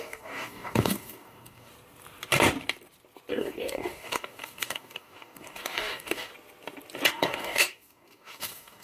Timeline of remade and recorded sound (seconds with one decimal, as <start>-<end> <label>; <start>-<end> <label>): 0.0-1.7 remade; 1.7-3.3 recorded; 3.3-6.3 remade; 6.3-7.1 recorded; 7.1-8.8 remade

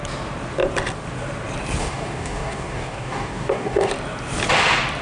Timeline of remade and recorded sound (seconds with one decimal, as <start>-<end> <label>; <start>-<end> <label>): 0.0-1.8 recorded; 1.8-3.9 remade; 3.9-5.0 recorded

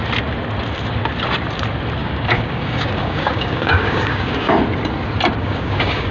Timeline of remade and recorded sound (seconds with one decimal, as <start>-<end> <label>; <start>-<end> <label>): 0.0-2.0 recorded; 2.0-4.6 remade; 4.6-5.4 recorded; 5.4-6.1 remade

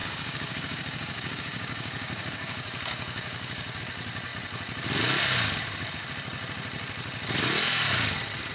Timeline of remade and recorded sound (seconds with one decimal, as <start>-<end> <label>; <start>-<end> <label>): 0.0-3.8 remade; 3.8-8.5 recorded

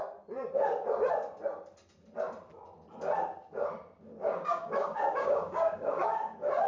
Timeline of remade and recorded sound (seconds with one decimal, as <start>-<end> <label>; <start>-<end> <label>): 0.0-4.2 recorded; 4.2-6.7 remade

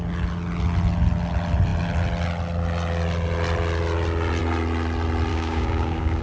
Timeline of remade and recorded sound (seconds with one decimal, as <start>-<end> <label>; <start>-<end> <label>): 0.0-5.3 recorded; 5.3-6.2 remade